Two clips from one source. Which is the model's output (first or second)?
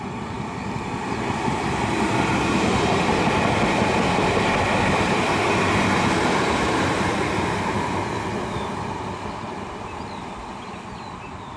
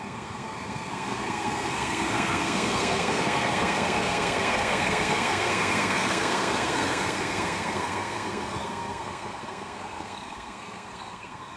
second